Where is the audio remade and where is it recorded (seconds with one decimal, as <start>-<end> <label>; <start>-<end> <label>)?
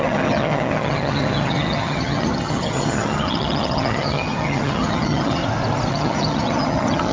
0.0-5.4 remade; 5.4-5.9 recorded; 5.9-7.1 remade